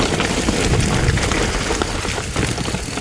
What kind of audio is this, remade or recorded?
recorded